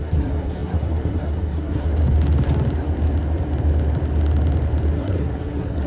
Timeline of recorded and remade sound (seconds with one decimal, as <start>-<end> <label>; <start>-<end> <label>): 0.0-1.9 remade; 1.9-4.9 recorded; 4.9-5.9 remade